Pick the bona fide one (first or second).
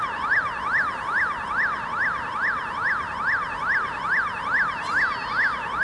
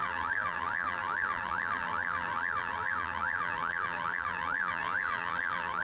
first